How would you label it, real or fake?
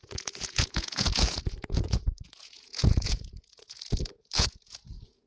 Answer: fake